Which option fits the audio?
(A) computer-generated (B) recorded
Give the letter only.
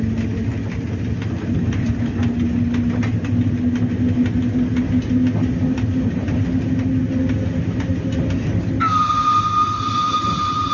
B